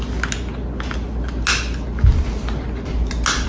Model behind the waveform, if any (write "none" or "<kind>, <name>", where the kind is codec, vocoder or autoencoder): none